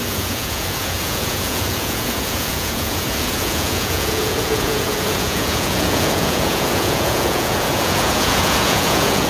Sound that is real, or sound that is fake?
fake